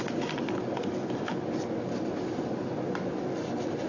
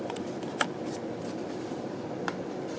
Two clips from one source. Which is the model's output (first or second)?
second